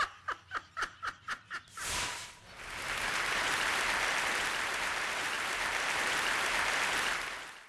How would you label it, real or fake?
real